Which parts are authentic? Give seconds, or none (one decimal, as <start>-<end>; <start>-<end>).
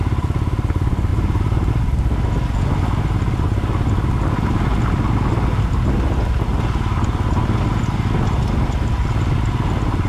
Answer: 0.0-1.1; 1.7-10.1